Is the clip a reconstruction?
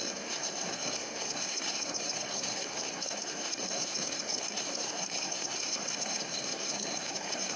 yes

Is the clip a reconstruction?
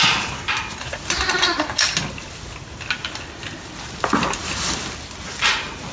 no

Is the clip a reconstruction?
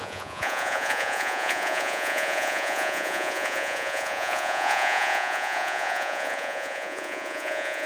yes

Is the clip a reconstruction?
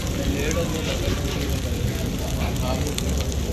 no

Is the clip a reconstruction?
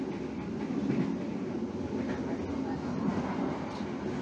no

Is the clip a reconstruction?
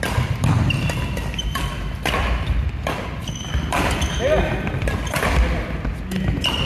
no